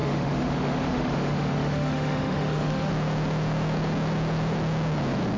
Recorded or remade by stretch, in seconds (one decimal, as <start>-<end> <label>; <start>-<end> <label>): 0.0-2.9 remade; 2.9-5.4 recorded